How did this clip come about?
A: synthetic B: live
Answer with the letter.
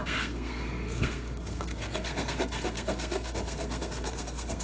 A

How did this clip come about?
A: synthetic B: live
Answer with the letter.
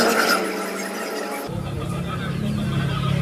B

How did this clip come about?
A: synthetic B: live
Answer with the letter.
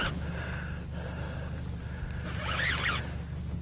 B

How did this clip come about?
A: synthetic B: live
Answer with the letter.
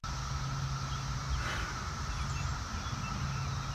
B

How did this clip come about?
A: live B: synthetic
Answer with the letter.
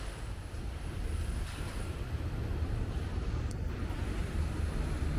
B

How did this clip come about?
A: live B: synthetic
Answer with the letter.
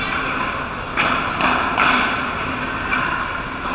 A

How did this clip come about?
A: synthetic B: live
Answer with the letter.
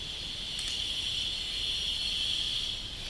B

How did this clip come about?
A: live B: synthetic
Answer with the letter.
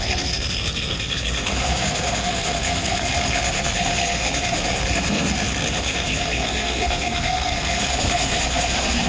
B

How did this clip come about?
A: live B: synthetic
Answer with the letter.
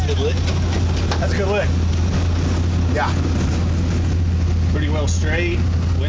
A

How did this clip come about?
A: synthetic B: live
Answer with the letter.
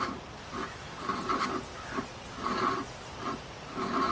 B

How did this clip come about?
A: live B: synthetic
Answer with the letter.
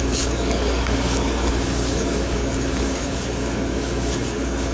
B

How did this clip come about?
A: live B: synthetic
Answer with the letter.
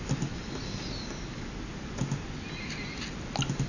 A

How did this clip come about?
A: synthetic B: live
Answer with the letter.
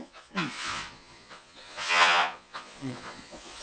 A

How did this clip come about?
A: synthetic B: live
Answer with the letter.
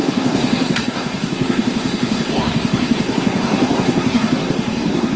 A